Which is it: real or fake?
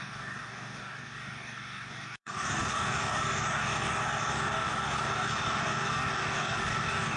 fake